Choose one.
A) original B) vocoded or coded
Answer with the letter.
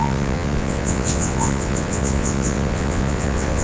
B